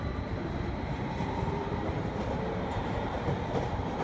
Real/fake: fake